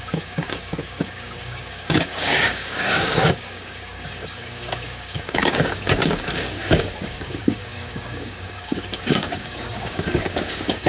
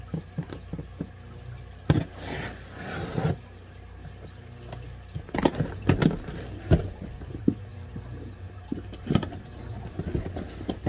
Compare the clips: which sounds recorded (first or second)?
second